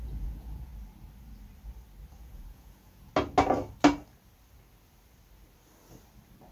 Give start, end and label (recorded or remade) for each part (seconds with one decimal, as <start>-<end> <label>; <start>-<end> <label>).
0.0-0.7 remade; 0.7-2.2 recorded; 2.2-3.1 remade; 3.1-6.5 recorded